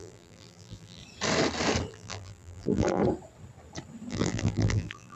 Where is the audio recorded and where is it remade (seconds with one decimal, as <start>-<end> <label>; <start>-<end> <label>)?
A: 0.0-1.0 remade; 1.0-1.9 recorded; 1.9-3.0 remade; 3.0-4.1 recorded; 4.1-5.2 remade